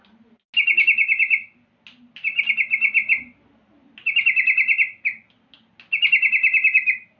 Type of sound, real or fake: real